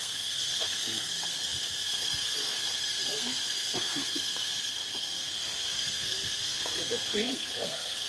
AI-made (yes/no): yes